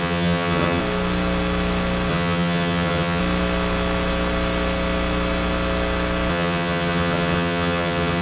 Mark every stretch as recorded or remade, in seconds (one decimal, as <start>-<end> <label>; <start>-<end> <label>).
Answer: 0.0-0.8 remade; 0.8-2.1 recorded; 2.1-3.2 remade; 3.2-6.3 recorded; 6.3-8.2 remade